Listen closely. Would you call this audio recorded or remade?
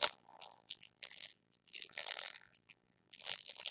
remade